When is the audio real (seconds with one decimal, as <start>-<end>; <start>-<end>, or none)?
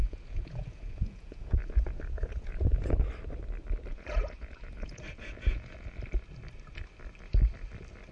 2.9-3.9; 6.0-8.1